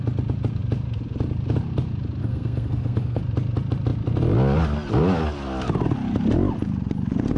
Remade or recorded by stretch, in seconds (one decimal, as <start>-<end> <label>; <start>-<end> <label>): 0.0-2.2 recorded; 2.2-3.2 remade; 3.2-7.4 recorded

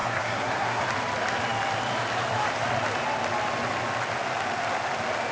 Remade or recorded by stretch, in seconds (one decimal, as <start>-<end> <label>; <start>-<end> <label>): 0.0-0.8 remade; 0.8-5.3 recorded

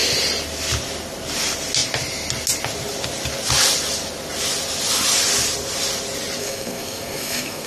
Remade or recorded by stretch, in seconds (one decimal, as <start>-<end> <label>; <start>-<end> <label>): 0.0-6.4 recorded; 6.4-7.7 remade

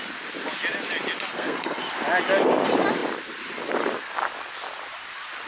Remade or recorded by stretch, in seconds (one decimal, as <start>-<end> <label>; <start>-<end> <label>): 0.0-1.3 recorded; 1.3-1.8 remade; 1.8-5.5 recorded

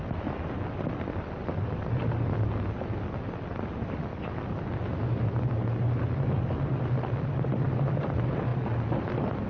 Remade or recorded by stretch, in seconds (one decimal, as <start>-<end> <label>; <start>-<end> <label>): 0.0-9.5 recorded

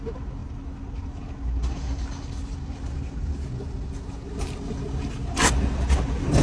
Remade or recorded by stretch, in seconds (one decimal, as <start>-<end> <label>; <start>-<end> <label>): 0.0-6.4 recorded

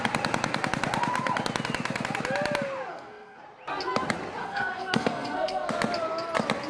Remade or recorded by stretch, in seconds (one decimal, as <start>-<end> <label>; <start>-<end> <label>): 0.0-2.9 recorded; 2.9-3.4 remade; 3.4-4.4 recorded; 4.4-5.7 remade; 5.7-6.7 recorded